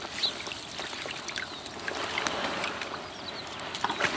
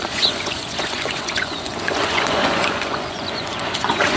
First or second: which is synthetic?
second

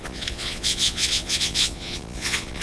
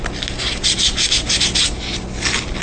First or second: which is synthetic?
first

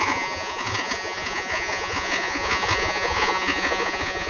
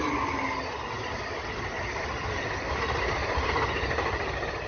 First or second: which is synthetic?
first